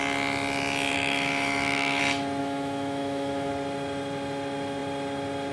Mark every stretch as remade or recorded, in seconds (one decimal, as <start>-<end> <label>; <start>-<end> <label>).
0.0-0.9 recorded; 0.9-2.0 remade; 2.0-2.4 recorded; 2.4-3.5 remade; 3.5-5.5 recorded